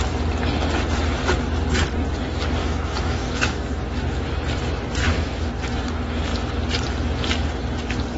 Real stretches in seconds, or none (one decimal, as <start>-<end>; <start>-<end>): 0.0-2.6; 3.7-5.0; 5.5-8.2